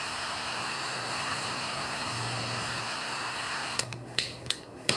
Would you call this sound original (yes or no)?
no